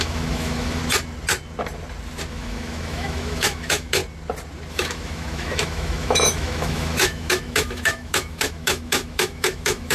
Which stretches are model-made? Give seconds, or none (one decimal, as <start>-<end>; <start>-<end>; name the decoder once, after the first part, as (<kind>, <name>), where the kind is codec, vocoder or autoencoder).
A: 0.0-0.8 (autoencoder, DAC-VAE); 2.3-4.0; 4.7-9.9